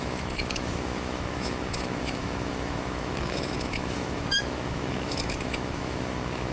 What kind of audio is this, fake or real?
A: fake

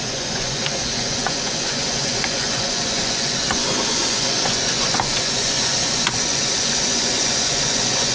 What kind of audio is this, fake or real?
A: fake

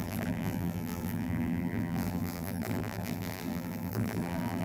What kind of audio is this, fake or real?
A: fake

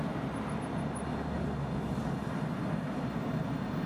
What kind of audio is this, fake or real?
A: real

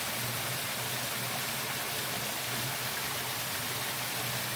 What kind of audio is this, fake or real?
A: real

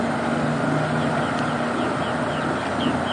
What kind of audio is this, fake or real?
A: real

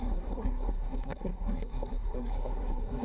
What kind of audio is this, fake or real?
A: fake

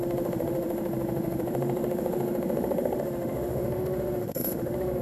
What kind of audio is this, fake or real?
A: fake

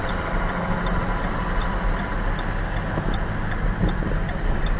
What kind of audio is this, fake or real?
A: real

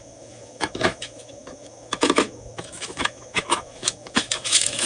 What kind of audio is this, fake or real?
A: fake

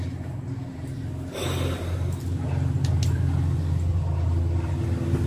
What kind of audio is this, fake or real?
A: real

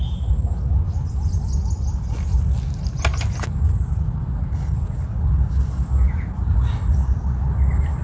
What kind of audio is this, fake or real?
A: real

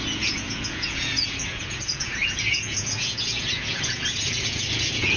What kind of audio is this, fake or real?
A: fake